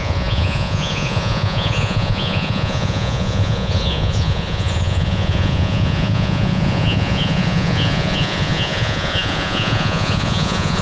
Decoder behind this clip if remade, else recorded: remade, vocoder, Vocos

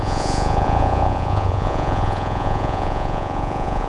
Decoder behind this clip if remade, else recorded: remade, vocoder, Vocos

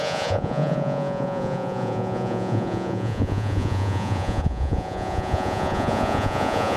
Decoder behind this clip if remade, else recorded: remade, vocoder, Vocos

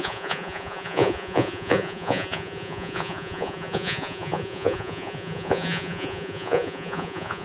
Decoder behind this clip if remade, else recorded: remade, vocoder, Vocos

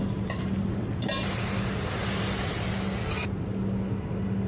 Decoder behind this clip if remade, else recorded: recorded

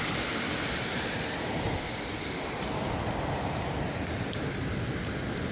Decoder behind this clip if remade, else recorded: recorded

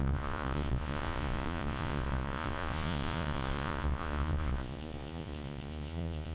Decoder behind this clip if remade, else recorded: remade, vocoder, Vocos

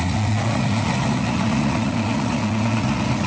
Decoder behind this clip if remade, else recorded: remade, vocoder, Vocos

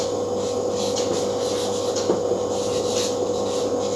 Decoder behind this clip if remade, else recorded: recorded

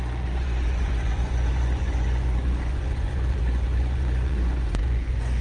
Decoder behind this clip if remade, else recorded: remade, vocoder, Vocos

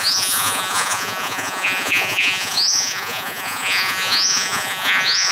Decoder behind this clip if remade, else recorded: remade, vocoder, Vocos